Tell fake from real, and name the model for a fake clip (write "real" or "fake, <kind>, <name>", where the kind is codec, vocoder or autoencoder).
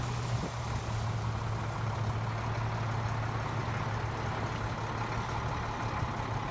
real